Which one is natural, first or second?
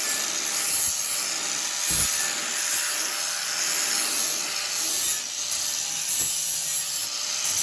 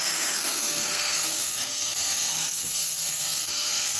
first